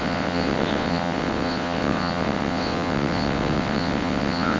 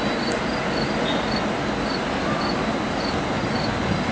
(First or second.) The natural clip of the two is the second